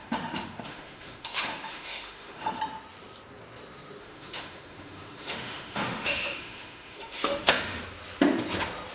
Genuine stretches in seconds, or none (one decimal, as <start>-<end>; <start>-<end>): 2.6-4.0; 7.8-8.9